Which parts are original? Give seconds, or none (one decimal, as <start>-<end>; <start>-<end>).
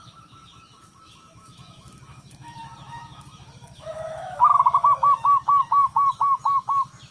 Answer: none